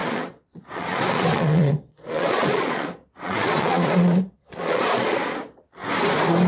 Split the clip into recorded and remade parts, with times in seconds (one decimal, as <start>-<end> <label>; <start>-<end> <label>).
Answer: 0.0-5.8 remade; 5.8-6.5 recorded